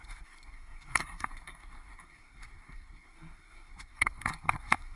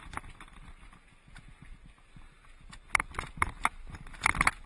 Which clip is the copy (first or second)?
first